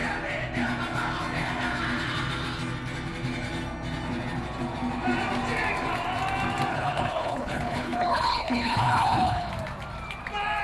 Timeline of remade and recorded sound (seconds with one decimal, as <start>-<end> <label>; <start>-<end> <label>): 0.0-6.7 recorded; 6.7-9.5 remade; 9.5-10.6 recorded